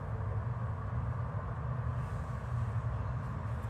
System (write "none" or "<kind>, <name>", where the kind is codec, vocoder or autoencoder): none